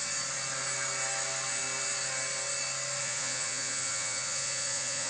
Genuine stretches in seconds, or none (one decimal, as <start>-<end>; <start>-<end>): 0.0-3.0